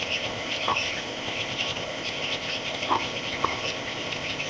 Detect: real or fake fake